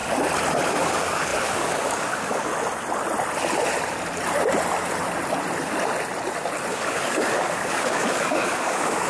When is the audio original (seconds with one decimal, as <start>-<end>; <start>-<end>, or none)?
0.0-0.7; 2.5-6.7